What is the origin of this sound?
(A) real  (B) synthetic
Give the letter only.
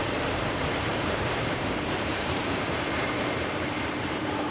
B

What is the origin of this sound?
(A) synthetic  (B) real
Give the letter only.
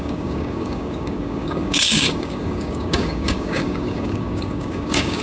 A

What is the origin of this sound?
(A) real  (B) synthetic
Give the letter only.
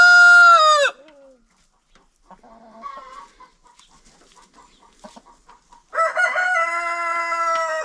A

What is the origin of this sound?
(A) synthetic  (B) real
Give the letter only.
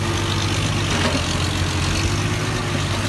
B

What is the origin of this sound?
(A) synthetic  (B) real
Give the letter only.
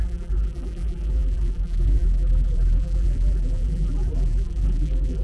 A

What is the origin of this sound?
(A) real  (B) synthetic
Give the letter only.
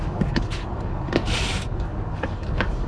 B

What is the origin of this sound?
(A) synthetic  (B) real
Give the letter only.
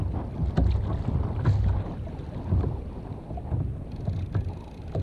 B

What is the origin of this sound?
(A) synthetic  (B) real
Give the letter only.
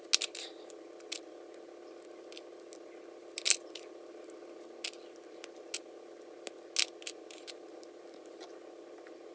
B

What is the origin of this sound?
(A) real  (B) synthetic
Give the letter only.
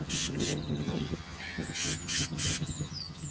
B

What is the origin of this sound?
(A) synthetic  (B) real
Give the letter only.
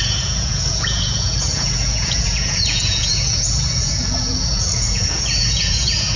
A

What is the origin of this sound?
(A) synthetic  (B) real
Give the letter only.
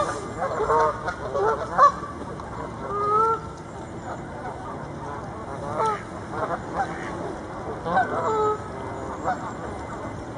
B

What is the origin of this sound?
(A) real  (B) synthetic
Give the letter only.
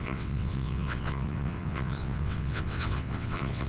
B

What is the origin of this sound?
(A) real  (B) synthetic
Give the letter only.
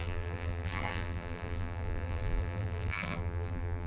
B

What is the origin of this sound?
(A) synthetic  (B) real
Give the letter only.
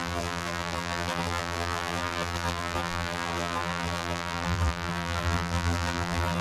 A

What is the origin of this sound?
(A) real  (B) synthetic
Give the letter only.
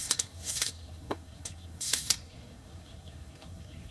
B